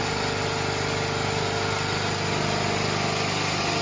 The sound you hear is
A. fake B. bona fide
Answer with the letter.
B